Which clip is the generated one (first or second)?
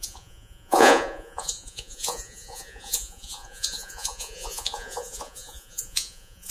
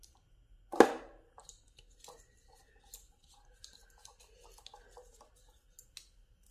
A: first